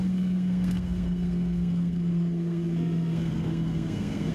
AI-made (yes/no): yes